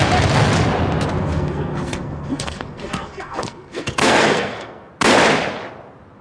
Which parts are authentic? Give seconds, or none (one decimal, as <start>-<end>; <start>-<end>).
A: 0.0-1.2; 4.9-6.2